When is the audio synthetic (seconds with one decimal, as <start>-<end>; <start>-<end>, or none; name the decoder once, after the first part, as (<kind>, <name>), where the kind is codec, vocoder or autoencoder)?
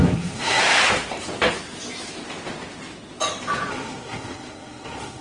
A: 0.0-0.6 (codec, SNAC); 3.7-5.2